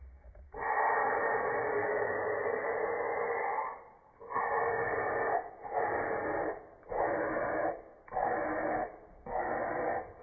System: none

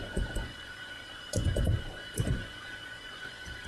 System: vocoder, Vocos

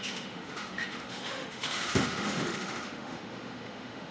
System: autoencoder, DAC-VAE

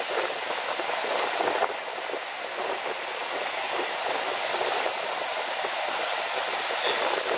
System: none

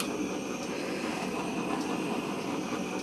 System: none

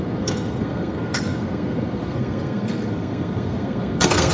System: codec, SNAC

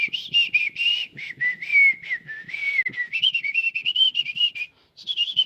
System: none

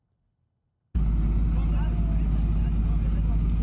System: none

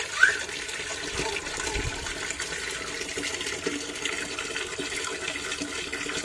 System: none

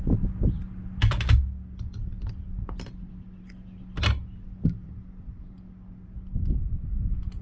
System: none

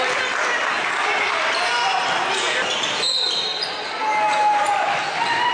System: none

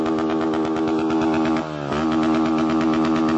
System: none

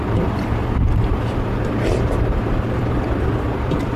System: vocoder, BigVGAN v2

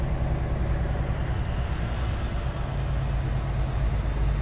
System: none